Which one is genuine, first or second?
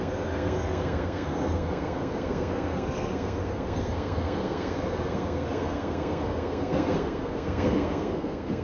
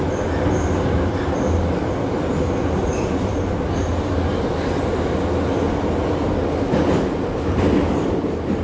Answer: second